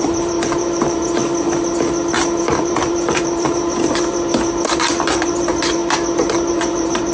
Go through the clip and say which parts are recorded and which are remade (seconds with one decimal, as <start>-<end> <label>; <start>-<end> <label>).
0.0-1.2 remade; 1.2-2.6 recorded; 2.6-5.8 remade; 5.8-6.5 recorded; 6.5-7.1 remade